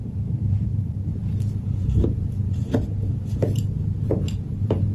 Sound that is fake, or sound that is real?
fake